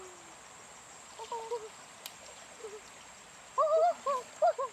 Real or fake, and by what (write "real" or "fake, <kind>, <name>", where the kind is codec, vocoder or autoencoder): real